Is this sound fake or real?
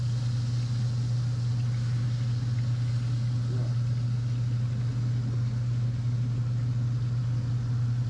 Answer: real